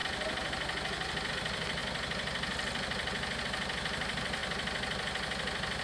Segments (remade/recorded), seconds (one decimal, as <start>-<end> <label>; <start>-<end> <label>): 0.0-1.8 remade; 1.8-3.4 recorded; 3.4-4.4 remade; 4.4-5.8 recorded